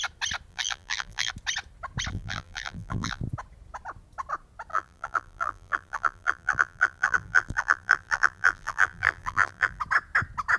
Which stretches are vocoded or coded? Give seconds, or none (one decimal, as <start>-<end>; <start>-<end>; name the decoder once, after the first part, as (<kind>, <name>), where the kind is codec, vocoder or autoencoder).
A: 0.5-1.3 (vocoder, BigVGAN v2); 2.1-3.2; 4.7-9.8